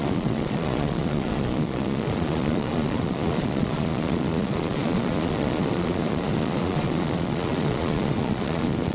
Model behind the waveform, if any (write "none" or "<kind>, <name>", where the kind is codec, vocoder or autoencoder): vocoder, Vocos